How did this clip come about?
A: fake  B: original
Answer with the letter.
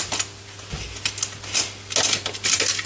B